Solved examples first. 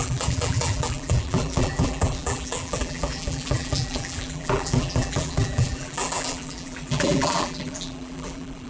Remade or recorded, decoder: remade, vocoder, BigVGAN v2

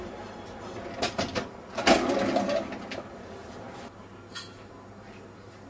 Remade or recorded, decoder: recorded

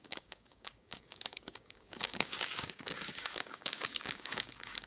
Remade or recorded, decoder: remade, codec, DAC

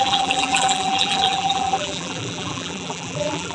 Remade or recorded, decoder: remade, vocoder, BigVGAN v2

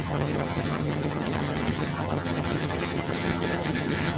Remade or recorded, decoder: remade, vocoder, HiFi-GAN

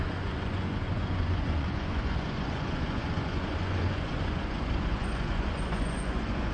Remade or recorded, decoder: remade, vocoder, Vocos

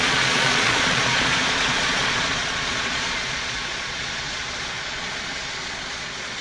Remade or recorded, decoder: remade, vocoder, Vocos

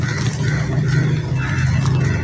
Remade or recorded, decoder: recorded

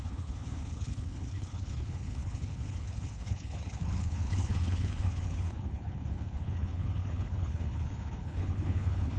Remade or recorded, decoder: remade, codec, HILCodec